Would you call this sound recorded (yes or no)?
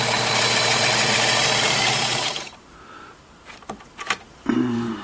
no